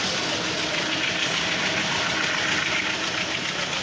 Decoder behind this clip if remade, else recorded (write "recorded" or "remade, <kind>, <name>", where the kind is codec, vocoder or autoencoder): recorded